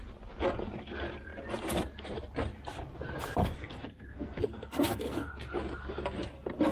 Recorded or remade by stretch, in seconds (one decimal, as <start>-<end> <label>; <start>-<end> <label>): 0.0-3.4 recorded; 3.4-5.3 remade; 5.3-6.7 recorded